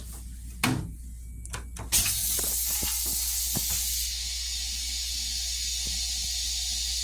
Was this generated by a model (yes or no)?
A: no